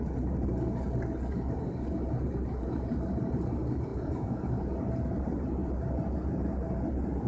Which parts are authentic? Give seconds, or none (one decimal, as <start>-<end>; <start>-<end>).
0.0-3.9; 4.5-7.3